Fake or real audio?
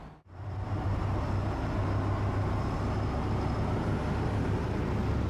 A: real